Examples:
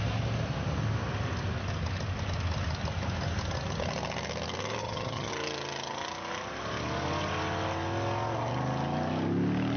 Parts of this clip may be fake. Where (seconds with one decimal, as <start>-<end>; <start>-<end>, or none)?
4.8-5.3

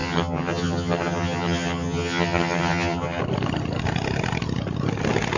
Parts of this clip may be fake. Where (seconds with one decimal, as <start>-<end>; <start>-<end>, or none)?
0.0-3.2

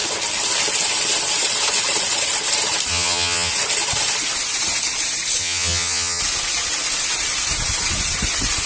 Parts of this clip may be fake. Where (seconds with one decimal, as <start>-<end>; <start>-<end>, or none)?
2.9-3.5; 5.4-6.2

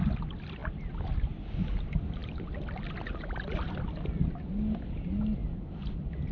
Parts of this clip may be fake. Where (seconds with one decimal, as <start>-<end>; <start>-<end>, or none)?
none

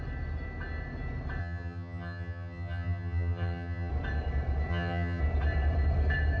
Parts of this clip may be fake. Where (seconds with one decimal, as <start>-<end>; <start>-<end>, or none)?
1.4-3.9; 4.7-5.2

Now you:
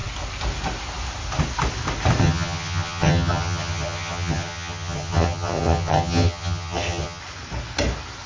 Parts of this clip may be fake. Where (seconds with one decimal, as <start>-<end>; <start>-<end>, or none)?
2.2-7.2

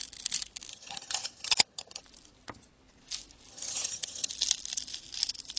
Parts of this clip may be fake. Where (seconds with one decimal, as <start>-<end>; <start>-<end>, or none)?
0.7-2.0; 3.5-4.3

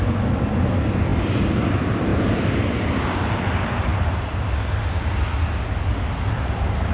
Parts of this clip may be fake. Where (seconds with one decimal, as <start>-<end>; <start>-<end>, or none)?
none